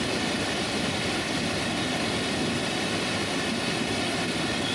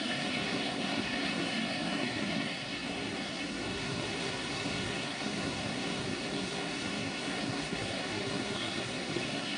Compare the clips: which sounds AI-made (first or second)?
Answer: second